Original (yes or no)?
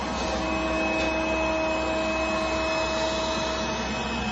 yes